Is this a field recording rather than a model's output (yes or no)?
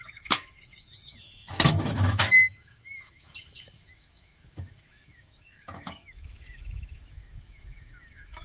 no